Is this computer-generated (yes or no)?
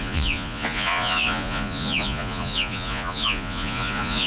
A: yes